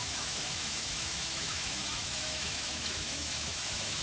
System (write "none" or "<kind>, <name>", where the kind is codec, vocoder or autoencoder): autoencoder, DAC-VAE